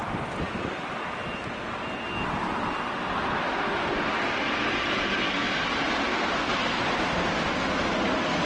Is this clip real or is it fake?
real